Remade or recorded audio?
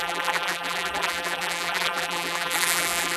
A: remade